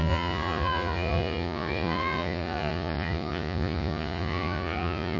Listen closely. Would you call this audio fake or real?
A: fake